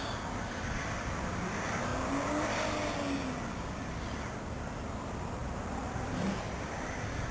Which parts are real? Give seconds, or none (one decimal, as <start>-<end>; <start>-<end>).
1.9-3.7